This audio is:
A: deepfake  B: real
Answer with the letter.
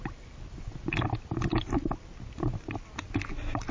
B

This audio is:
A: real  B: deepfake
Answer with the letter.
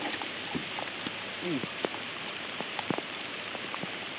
B